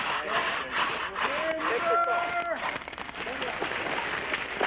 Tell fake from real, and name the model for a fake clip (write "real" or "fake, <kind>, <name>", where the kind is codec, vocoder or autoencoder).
real